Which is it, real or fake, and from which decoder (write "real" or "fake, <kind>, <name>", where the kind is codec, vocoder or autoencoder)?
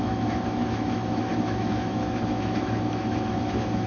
fake, autoencoder, DAC-VAE